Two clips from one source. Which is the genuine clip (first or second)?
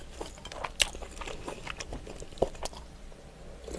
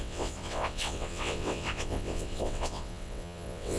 first